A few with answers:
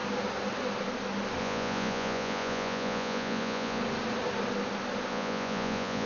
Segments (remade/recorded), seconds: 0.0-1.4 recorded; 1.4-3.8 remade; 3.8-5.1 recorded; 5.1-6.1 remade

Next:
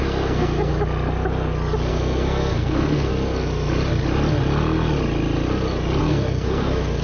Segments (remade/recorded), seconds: 0.0-0.7 remade; 0.7-1.9 recorded; 1.9-3.1 remade; 3.1-6.0 recorded; 6.0-7.0 remade

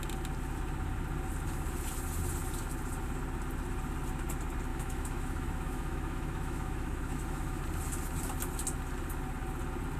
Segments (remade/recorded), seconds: 0.0-4.7 recorded; 4.7-7.6 remade; 7.6-10.0 recorded